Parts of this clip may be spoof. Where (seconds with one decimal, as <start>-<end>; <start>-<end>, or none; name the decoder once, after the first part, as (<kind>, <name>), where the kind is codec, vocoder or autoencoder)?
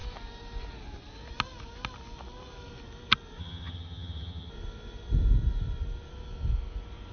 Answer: 3.4-4.5 (vocoder, HiFi-GAN)